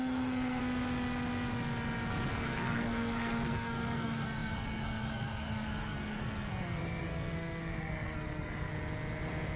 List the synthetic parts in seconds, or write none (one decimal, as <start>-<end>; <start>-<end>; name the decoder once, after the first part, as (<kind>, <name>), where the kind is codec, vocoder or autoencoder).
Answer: 0.0-0.6 (codec, SNAC); 2.3-8.7